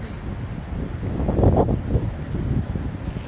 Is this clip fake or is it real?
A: real